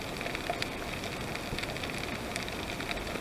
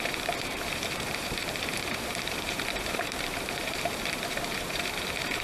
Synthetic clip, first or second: second